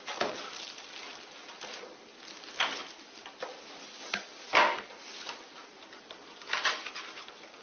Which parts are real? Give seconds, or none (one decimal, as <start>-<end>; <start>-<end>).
0.0-7.6